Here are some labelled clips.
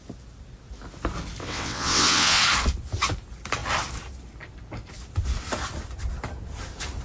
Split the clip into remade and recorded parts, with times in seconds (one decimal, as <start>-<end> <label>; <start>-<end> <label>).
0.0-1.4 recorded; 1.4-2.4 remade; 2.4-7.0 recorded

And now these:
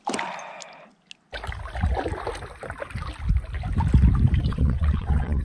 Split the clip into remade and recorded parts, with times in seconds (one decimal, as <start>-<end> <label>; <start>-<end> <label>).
0.0-4.5 recorded; 4.5-5.4 remade

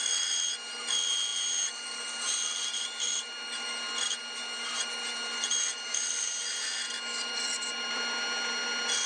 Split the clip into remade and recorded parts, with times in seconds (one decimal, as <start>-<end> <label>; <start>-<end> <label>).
0.0-9.1 recorded

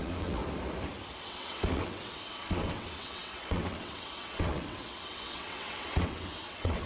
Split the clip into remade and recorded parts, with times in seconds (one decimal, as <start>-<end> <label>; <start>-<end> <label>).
0.0-0.4 remade; 0.4-1.2 recorded; 1.2-6.9 remade

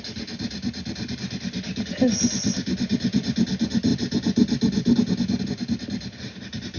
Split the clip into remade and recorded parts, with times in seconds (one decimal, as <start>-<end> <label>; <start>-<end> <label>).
0.0-6.8 recorded

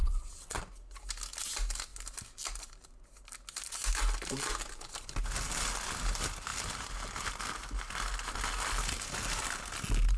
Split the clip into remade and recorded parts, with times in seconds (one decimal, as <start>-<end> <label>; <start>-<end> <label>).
0.0-0.6 remade; 0.6-10.2 recorded

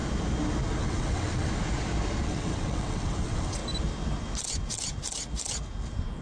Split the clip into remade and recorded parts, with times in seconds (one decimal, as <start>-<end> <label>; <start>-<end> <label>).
0.0-0.8 recorded; 0.8-1.5 remade; 1.5-2.2 recorded; 2.2-3.6 remade; 3.6-6.2 recorded

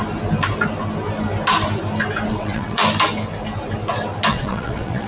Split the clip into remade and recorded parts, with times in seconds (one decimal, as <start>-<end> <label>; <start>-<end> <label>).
0.0-2.3 recorded; 2.3-2.8 remade; 2.8-4.3 recorded; 4.3-5.1 remade